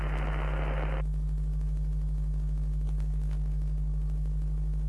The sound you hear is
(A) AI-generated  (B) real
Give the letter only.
B